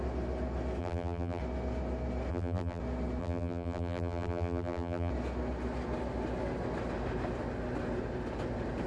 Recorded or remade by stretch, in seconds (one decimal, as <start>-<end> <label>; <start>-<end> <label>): 0.0-0.8 recorded; 0.8-1.4 remade; 1.4-2.3 recorded; 2.3-2.8 remade; 2.8-3.2 recorded; 3.2-5.1 remade; 5.1-8.9 recorded